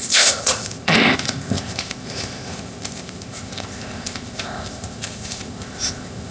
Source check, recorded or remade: remade